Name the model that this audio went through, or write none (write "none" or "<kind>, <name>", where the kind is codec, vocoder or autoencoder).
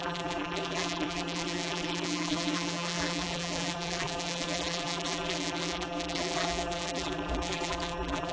vocoder, BigVGAN v2